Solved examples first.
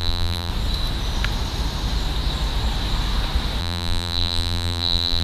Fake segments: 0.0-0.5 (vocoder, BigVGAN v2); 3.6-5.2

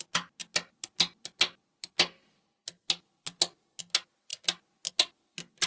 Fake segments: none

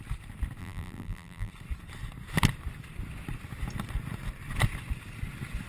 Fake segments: 0.6-1.5 (vocoder, BigVGAN v2)

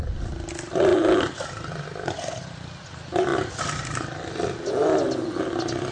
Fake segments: none